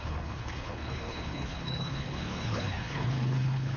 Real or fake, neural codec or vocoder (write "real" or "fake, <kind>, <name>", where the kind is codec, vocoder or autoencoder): fake, codec, HILCodec